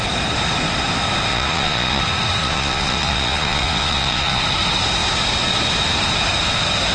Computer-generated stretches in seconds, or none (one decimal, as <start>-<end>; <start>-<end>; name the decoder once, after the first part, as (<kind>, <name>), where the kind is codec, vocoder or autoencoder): 1.3-2.0 (vocoder, Vocos); 2.4-4.4